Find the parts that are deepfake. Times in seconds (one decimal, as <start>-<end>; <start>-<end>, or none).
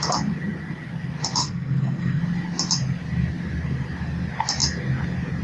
1.4-2.2